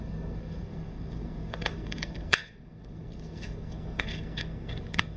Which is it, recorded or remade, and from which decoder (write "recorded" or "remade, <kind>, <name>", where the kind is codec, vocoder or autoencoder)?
remade, codec, SNAC